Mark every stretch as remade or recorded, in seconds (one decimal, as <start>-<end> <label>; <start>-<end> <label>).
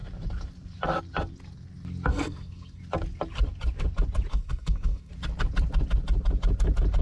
0.0-2.1 recorded; 2.1-2.8 remade; 2.8-4.3 recorded; 4.3-5.1 remade; 5.1-7.0 recorded